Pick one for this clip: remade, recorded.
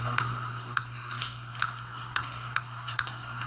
remade